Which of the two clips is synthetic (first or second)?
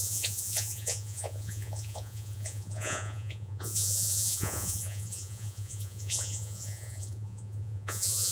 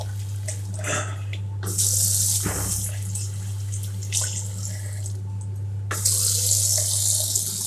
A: first